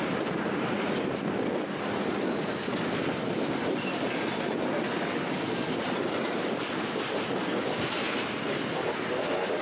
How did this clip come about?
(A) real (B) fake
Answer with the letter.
A